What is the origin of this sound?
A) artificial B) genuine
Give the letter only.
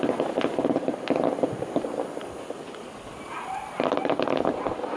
B